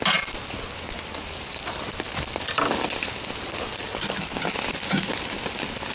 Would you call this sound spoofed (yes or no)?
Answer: no